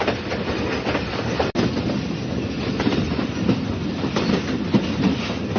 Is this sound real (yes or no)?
yes